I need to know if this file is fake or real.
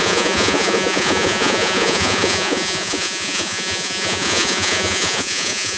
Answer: fake